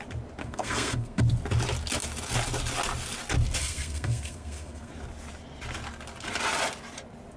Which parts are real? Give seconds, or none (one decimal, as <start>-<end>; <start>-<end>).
0.0-0.4; 1.2-3.6; 4.9-7.4